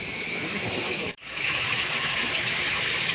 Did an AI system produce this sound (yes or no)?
yes